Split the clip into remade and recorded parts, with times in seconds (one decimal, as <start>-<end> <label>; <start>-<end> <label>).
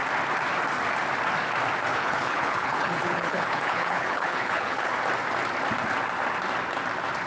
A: 0.0-1.9 recorded; 1.9-4.9 remade; 4.9-7.3 recorded